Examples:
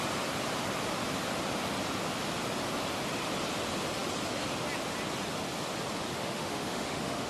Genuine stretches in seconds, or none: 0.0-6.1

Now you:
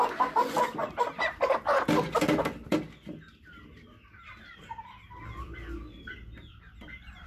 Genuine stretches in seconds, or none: 0.0-7.3

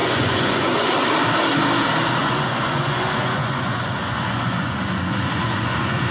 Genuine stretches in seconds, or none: 0.9-2.2

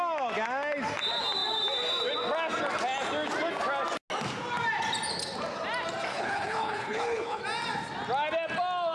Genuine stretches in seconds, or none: 0.0-6.1; 7.4-8.9

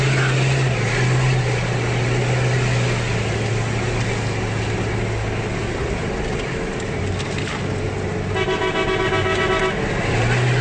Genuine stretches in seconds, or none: 0.0-5.8; 7.0-10.6